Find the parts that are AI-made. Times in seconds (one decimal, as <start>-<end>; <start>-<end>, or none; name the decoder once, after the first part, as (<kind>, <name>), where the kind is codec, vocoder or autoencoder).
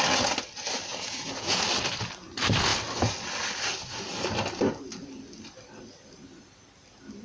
0.9-1.6 (vocoder, Vocos)